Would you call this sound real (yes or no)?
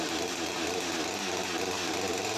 yes